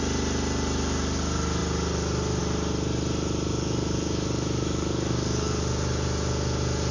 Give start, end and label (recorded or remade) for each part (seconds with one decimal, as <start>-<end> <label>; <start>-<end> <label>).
0.0-3.5 recorded; 3.5-5.6 remade; 5.6-6.9 recorded